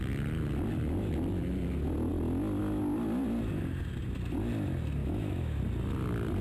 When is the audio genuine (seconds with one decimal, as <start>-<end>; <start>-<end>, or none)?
0.0-5.0; 5.6-6.4